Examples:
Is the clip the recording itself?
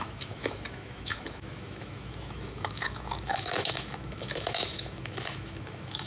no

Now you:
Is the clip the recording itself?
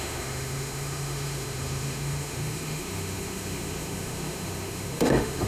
no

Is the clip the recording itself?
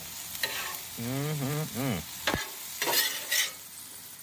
yes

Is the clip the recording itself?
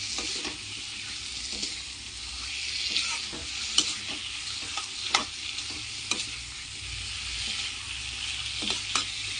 yes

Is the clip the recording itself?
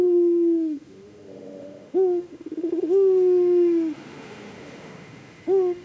no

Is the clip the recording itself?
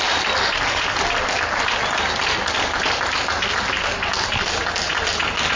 yes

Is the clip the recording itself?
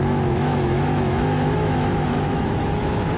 no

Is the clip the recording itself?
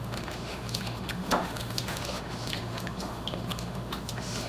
no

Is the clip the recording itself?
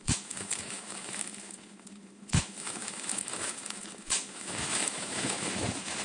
no